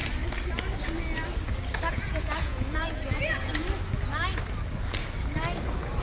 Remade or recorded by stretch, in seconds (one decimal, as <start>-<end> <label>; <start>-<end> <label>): 0.0-1.9 recorded; 1.9-3.5 remade; 3.5-6.0 recorded